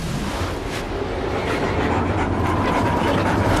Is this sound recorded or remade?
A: recorded